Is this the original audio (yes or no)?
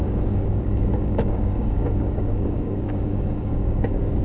no